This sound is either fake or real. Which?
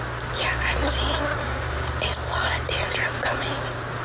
real